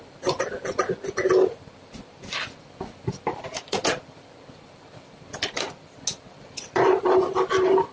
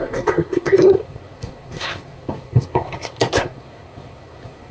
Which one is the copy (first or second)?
second